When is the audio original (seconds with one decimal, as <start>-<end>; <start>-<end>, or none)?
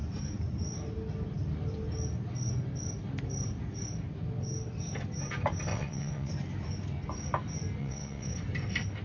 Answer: 0.0-5.7; 6.3-7.8; 8.4-9.0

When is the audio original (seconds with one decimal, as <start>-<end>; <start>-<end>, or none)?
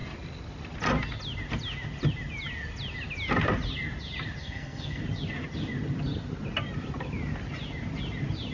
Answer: 0.0-4.4; 5.0-8.5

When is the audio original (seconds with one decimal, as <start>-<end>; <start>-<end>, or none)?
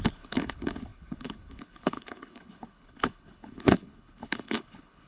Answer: none